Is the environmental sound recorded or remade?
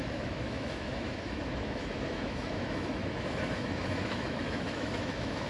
remade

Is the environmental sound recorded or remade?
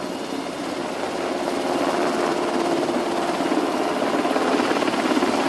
recorded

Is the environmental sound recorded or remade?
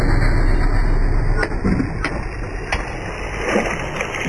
recorded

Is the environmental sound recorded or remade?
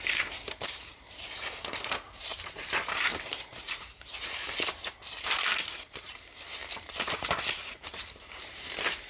remade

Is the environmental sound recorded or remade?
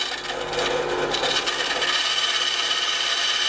recorded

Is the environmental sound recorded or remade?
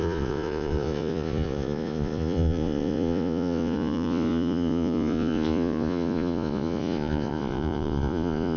remade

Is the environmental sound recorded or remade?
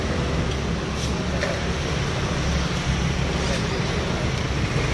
recorded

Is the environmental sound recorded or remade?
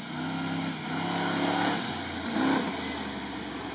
recorded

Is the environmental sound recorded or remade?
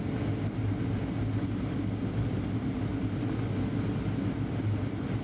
recorded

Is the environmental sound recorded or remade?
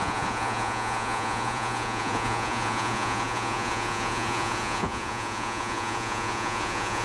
remade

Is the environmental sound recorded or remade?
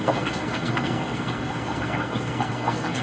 remade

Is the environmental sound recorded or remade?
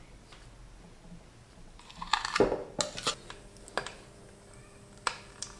recorded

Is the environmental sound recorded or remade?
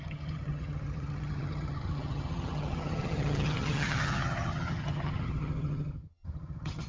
remade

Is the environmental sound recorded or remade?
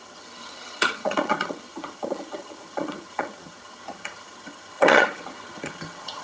remade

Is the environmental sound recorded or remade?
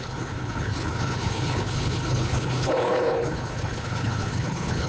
remade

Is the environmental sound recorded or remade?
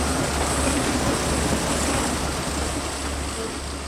recorded